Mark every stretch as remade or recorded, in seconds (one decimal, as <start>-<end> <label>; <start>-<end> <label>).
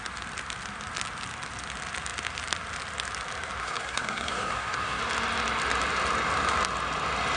0.0-3.6 recorded; 3.6-5.0 remade; 5.0-7.4 recorded